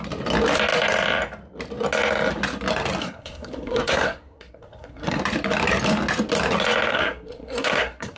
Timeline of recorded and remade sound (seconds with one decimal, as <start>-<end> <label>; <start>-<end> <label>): 0.0-3.0 recorded; 3.0-5.2 remade; 5.2-6.9 recorded; 6.9-8.2 remade